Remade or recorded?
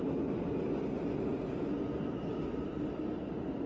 recorded